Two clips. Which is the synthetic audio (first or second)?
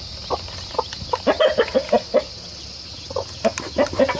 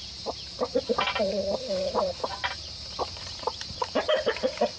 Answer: second